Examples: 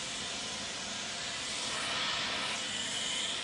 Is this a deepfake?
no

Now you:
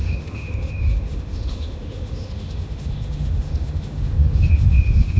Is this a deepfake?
yes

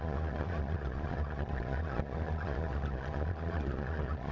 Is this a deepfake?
yes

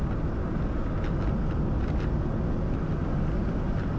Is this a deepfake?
no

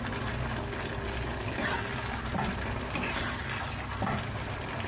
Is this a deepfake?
no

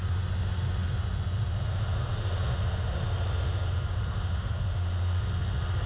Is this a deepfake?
no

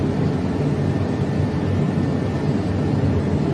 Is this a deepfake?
no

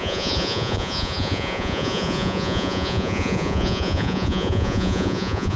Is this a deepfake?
yes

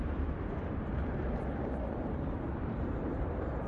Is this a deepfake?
yes